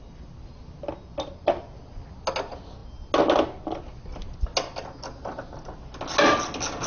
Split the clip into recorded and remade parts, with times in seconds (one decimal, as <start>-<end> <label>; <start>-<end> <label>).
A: 0.0-6.9 recorded